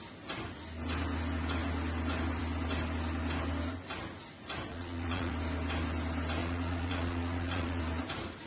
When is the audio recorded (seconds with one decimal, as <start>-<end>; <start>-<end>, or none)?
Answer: 0.0-4.7; 5.3-6.4; 7.8-8.5